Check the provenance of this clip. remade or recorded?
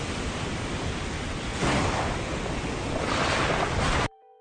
recorded